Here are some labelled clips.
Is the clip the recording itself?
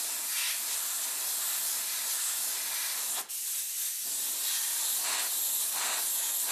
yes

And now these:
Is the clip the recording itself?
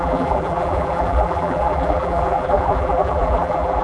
no